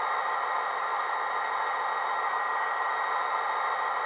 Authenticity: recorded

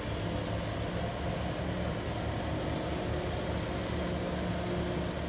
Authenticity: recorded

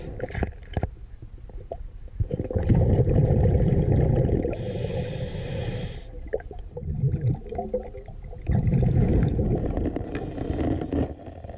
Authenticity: recorded